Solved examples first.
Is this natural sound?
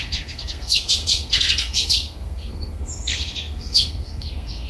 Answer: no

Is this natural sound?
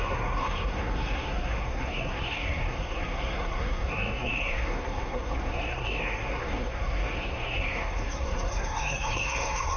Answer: no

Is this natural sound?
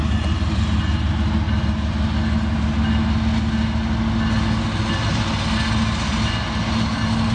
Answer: yes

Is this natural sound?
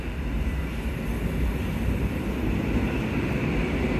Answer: yes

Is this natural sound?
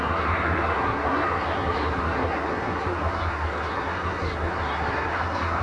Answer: no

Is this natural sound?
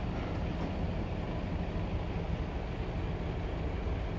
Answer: yes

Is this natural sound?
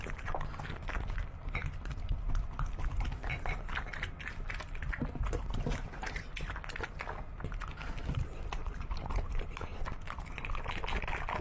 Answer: yes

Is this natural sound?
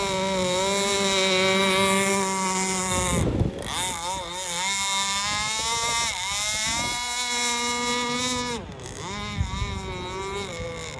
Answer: yes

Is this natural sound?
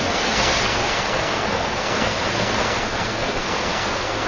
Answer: no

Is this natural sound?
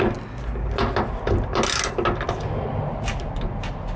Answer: yes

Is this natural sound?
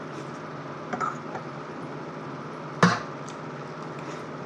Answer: yes